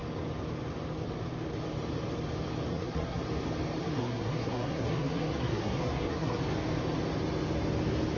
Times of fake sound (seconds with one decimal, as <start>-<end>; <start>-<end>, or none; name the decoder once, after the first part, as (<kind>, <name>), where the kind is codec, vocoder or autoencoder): 2.7-3.2 (codec, SNAC); 3.8-6.4